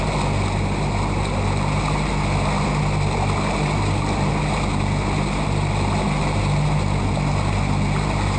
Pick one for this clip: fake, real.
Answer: real